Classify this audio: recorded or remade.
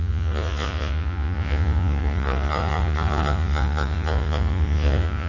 remade